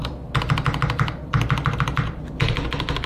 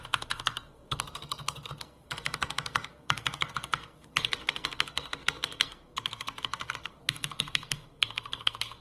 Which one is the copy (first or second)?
second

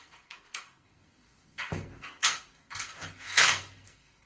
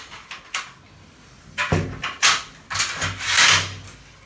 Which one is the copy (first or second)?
first